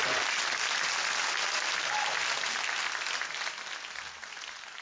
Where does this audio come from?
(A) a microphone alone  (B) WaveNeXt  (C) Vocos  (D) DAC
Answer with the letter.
A